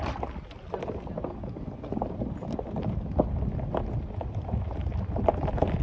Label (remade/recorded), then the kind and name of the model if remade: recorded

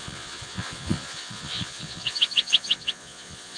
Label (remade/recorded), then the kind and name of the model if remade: remade, vocoder, Vocos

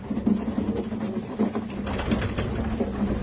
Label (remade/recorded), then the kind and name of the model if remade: recorded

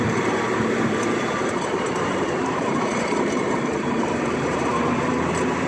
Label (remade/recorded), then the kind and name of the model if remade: remade, vocoder, BigVGAN v2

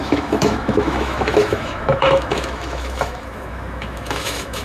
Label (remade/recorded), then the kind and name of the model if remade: remade, autoencoder, DAC-VAE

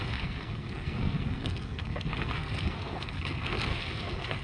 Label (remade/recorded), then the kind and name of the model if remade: remade, codec, SNAC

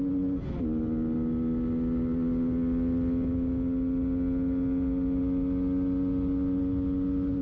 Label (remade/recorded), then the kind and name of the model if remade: recorded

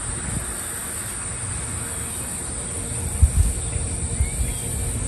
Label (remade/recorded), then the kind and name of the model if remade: recorded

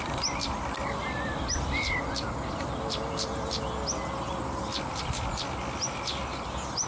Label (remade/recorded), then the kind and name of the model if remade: recorded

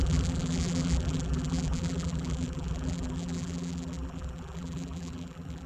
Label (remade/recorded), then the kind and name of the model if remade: remade, vocoder, BigVGAN v2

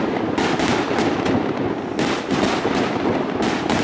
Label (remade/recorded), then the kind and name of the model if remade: recorded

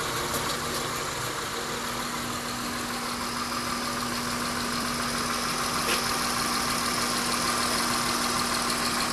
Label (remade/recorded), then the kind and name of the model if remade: recorded